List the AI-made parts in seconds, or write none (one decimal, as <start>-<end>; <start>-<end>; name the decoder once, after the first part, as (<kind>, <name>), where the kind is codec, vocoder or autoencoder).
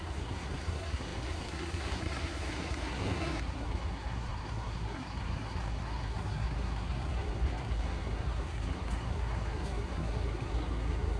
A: 0.0-11.2 (codec, SNAC)